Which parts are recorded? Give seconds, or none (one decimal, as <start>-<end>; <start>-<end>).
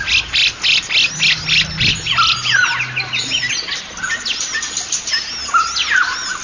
0.0-6.4